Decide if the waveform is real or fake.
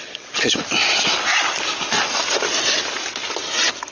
real